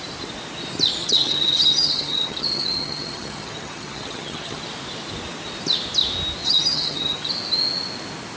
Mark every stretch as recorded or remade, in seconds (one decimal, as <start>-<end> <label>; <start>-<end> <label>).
0.0-1.0 recorded; 1.0-4.6 remade; 4.6-6.4 recorded; 6.4-7.3 remade; 7.3-8.4 recorded